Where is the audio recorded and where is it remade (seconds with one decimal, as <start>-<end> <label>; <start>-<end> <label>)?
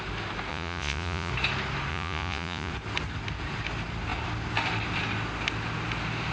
0.0-0.5 recorded; 0.5-1.3 remade; 1.3-1.9 recorded; 1.9-2.7 remade; 2.7-6.3 recorded